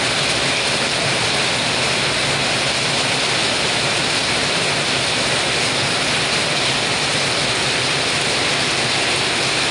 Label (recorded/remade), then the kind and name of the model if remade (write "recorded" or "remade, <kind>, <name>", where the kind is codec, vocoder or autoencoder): recorded